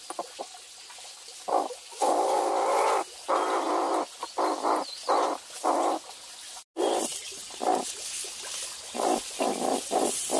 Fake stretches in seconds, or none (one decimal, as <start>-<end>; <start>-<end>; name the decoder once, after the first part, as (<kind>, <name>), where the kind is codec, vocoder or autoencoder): 1.9-2.5 (codec, DAC)